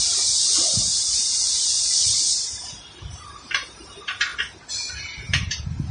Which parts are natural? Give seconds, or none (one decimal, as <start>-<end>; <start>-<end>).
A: 4.3-4.9